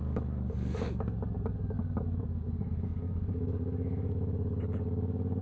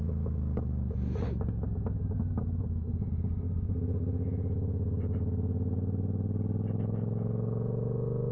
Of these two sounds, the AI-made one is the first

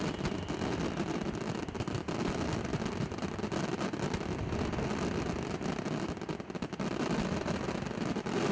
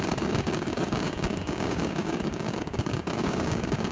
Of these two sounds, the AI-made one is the second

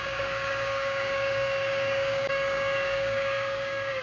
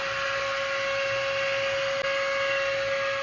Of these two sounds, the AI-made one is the first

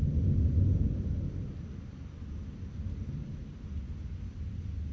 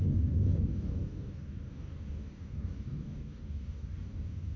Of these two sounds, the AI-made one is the second